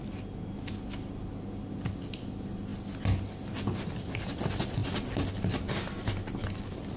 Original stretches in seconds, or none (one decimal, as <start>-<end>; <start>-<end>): 0.0-7.0